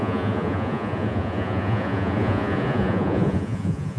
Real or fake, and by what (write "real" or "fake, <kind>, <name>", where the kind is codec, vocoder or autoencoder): fake, vocoder, Vocos